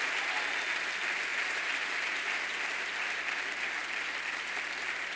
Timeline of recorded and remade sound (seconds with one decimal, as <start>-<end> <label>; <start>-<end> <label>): 0.0-1.3 recorded; 1.3-2.4 remade; 2.4-5.2 recorded